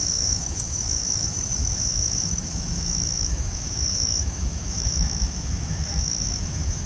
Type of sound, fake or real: fake